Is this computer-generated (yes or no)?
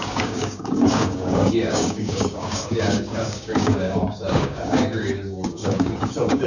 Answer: yes